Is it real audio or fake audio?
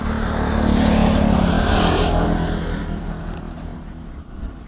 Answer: real